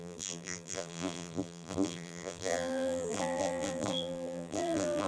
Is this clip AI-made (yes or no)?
yes